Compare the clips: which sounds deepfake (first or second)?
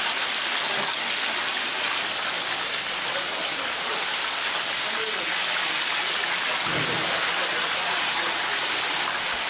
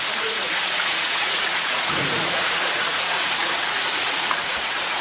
second